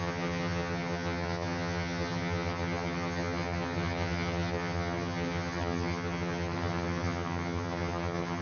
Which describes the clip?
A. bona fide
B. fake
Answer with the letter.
B